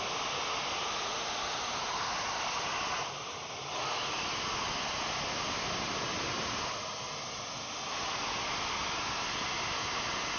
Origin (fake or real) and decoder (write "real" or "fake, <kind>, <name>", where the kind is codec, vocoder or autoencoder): real